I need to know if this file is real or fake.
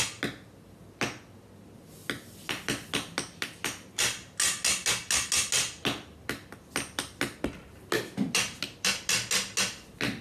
real